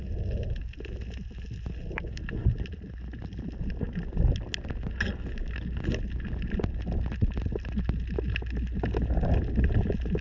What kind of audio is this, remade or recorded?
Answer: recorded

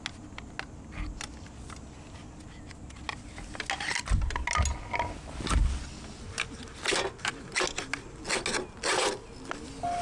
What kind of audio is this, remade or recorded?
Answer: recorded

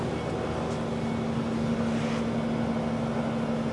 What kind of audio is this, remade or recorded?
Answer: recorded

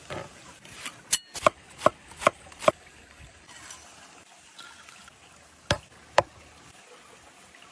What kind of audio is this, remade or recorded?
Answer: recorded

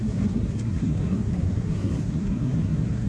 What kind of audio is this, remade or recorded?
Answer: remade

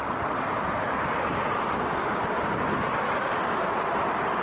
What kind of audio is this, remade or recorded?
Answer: recorded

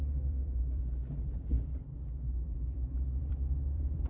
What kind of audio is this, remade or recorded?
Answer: remade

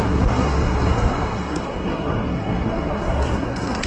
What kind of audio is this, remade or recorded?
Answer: remade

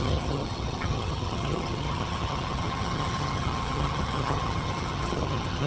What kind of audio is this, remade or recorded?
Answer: remade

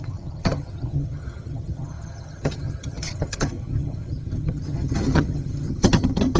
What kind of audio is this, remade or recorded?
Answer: remade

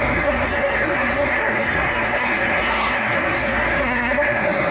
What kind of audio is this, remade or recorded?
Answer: remade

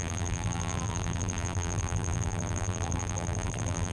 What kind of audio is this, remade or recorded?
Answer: remade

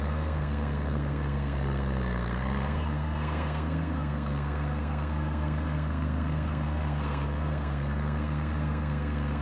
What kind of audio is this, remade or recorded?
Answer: remade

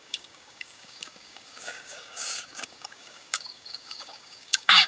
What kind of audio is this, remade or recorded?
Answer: remade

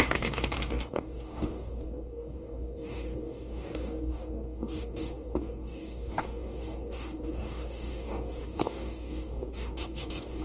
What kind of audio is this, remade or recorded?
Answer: remade